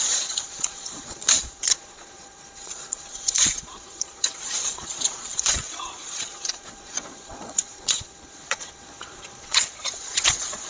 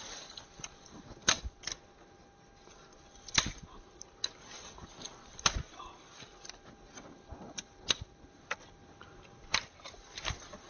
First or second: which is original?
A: second